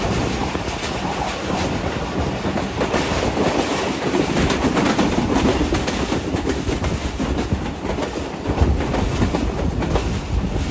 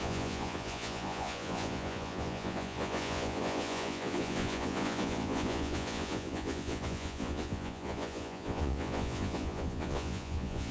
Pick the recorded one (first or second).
first